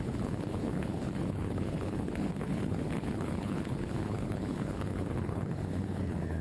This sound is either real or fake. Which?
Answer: fake